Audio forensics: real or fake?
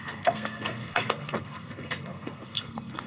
fake